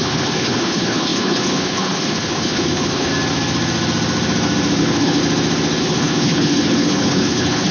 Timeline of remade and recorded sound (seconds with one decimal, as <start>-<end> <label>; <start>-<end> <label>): 0.0-3.1 remade; 3.1-4.8 recorded; 4.8-5.2 remade; 5.2-5.8 recorded; 5.8-7.7 remade